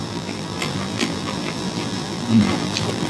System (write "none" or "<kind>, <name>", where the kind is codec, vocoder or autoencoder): vocoder, BigVGAN v2